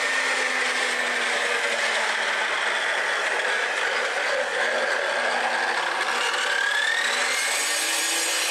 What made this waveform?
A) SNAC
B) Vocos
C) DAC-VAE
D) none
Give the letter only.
D